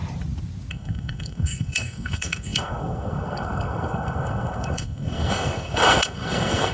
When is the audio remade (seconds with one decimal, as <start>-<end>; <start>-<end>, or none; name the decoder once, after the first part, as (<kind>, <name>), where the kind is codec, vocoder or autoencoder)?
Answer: 0.7-6.7 (codec, SNAC)